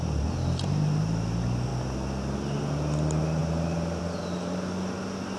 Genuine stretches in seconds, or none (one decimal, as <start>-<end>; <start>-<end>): 0.0-5.4